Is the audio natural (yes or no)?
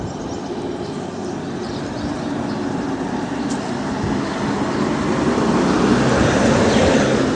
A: yes